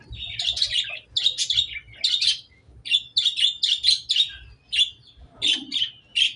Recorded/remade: recorded